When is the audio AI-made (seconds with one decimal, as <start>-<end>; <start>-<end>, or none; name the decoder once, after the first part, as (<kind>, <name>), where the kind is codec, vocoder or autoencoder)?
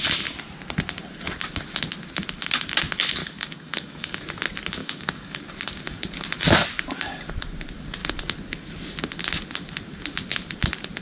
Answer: 3.2-4.2 (codec, DAC); 4.8-5.4